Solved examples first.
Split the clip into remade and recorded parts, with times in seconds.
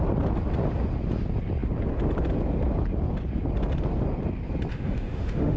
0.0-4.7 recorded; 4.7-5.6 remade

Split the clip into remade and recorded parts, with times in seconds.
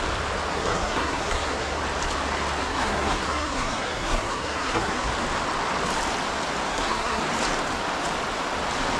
0.0-0.5 recorded; 0.5-1.8 remade; 1.8-2.6 recorded; 2.6-5.1 remade; 5.1-6.7 recorded; 6.7-7.2 remade; 7.2-9.0 recorded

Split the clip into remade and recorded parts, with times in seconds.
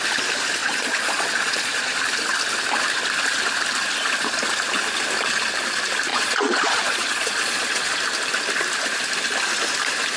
0.0-0.6 recorded; 0.6-2.0 remade; 2.0-6.1 recorded; 6.1-8.0 remade; 8.0-10.2 recorded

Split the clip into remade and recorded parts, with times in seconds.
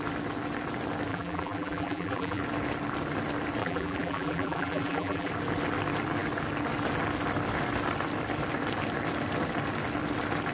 0.0-1.1 recorded; 1.1-2.4 remade; 2.4-3.6 recorded; 3.6-5.3 remade; 5.3-10.5 recorded